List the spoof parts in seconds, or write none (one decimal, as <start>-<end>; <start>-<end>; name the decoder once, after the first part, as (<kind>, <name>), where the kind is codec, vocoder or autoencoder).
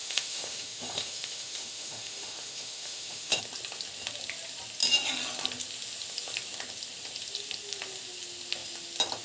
0.0-3.4 (autoencoder, DAC-VAE)